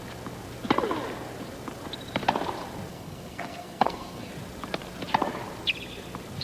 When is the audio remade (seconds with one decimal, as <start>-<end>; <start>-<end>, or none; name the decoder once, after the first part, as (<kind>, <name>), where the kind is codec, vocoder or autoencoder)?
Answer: 2.9-4.3 (codec, SNAC)